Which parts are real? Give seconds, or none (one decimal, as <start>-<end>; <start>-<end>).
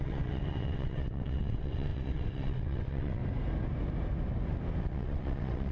3.2-4.8